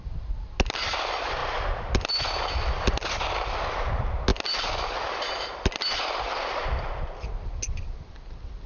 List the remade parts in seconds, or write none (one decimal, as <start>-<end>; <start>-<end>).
none